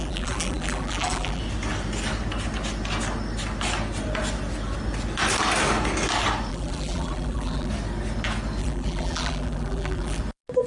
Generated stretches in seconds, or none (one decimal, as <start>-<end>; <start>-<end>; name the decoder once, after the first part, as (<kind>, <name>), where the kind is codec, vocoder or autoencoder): 0.0-1.4 (vocoder, BigVGAN v2); 6.5-7.7; 8.6-10.2